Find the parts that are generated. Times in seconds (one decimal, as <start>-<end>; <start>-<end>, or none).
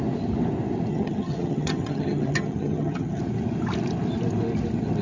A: 0.9-3.2